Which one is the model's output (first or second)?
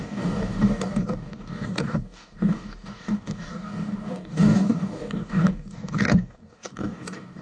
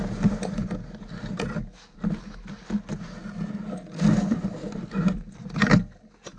first